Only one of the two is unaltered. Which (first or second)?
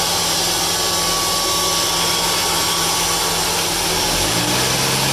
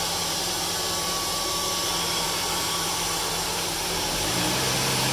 first